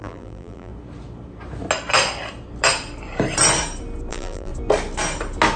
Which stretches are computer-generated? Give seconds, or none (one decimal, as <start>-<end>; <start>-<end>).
0.0-0.7; 4.1-4.5

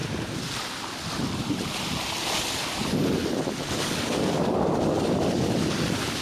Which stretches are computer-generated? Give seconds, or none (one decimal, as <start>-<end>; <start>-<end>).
3.7-6.2

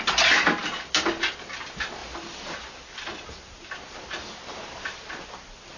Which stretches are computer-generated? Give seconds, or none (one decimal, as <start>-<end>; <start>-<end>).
2.0-5.8

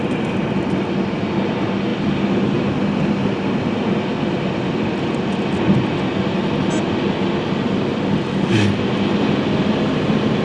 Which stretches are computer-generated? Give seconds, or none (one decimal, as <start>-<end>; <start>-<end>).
none